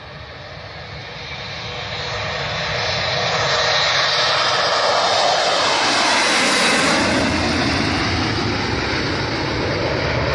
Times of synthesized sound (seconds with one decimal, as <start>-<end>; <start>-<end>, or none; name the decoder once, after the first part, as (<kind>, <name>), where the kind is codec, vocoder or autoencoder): none